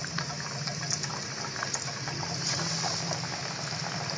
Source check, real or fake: real